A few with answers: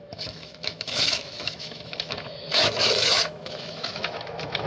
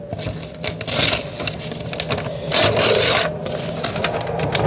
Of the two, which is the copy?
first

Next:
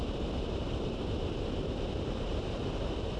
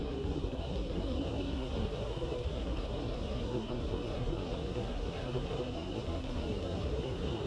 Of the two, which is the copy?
second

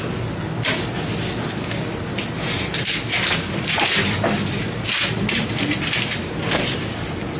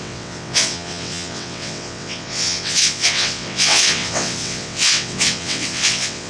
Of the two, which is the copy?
second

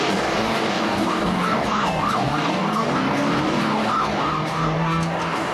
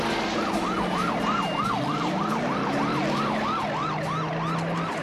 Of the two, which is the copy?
first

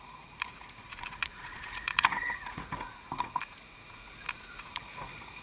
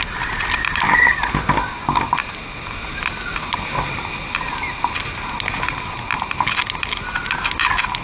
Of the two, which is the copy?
first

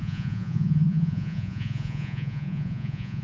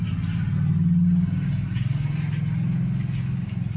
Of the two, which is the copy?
first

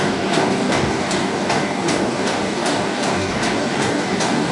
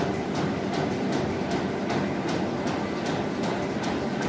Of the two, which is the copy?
first